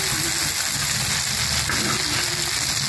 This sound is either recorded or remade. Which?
recorded